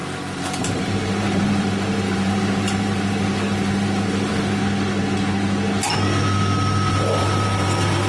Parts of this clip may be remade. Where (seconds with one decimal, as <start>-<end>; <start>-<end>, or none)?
0.0-4.6; 6.9-8.1